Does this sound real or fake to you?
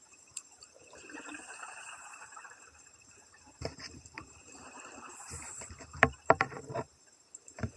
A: fake